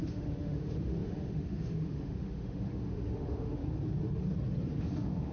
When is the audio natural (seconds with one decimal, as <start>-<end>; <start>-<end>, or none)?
3.6-4.8